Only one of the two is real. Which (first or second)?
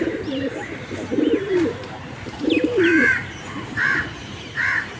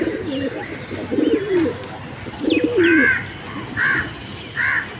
second